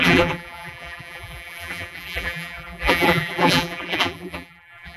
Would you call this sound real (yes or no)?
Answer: no